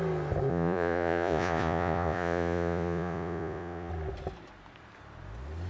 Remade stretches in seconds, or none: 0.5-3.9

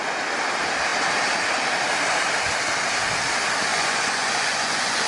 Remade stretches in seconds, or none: 3.7-5.1

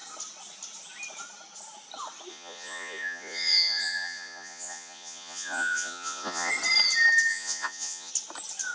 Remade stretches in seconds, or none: 2.3-6.5; 7.3-8.1